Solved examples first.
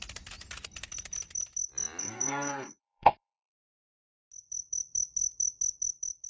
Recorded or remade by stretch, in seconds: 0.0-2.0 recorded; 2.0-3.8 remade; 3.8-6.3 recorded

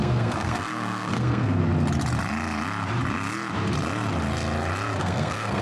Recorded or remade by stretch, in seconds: 0.0-1.6 remade; 1.6-5.0 recorded; 5.0-5.6 remade

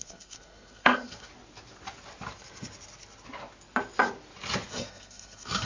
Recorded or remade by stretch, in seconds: 0.0-1.3 remade; 1.3-4.7 recorded; 4.7-5.7 remade

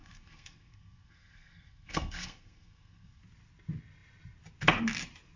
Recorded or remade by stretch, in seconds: 0.0-3.2 remade; 3.2-5.4 recorded

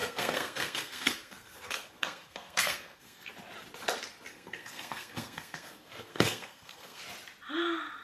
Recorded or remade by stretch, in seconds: 0.0-3.3 remade; 3.3-4.3 recorded; 4.3-7.0 remade; 7.0-8.0 recorded